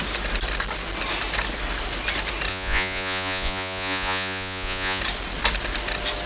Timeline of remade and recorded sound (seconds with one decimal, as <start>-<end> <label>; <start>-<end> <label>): 0.0-2.5 recorded; 2.5-5.0 remade; 5.0-6.3 recorded